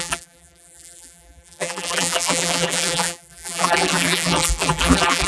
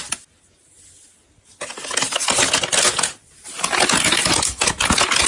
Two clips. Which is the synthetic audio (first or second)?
first